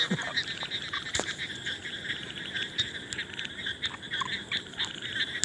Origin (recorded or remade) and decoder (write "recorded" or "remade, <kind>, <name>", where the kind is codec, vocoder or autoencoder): recorded